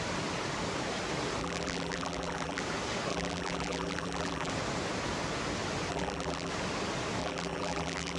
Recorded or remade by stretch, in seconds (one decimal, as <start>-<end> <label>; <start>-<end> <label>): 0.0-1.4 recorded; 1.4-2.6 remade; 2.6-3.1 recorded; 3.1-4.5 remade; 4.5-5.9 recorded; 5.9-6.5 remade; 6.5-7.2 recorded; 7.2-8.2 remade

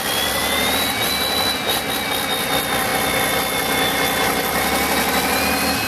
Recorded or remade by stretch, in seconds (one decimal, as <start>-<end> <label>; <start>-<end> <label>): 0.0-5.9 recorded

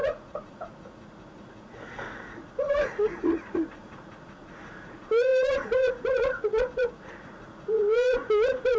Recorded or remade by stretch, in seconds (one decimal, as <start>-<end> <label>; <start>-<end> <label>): 0.0-8.8 remade